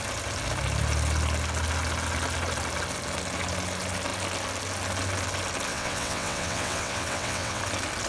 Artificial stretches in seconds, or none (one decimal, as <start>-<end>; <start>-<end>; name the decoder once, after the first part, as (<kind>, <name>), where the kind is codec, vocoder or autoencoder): 5.7-7.6 (vocoder, WaveNeXt)